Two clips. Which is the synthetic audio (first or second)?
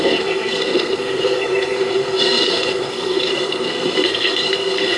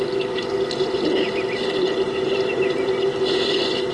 first